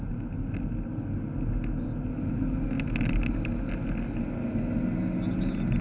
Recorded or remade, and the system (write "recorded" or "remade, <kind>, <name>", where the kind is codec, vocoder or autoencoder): recorded